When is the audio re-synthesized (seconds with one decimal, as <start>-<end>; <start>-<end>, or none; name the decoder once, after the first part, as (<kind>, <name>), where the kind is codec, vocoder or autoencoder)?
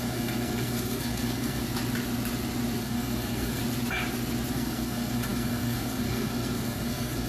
0.0-1.6 (codec, SNAC); 2.8-3.6; 4.5-7.3